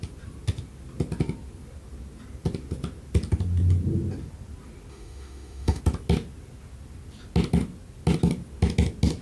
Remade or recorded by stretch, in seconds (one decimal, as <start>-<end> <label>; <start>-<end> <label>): 0.0-4.9 recorded; 4.9-5.8 remade; 5.8-9.2 recorded